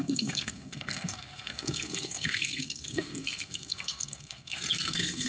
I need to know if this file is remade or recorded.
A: remade